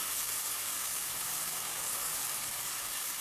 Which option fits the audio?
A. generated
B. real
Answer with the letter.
A